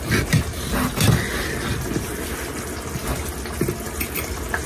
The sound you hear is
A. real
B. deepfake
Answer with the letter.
A